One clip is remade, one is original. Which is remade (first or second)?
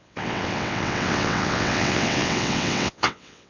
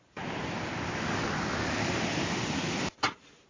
first